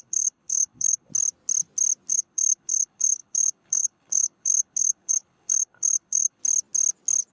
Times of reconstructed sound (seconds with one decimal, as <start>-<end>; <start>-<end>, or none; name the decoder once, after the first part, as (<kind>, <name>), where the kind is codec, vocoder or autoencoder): 0.0-1.1 (codec, HILCodec); 2.1-6.4